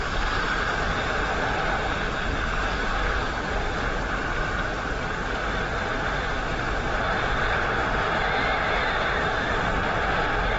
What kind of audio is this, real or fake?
real